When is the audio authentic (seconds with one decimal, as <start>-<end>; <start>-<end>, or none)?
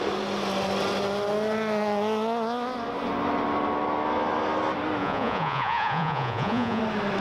0.0-5.0; 6.8-7.2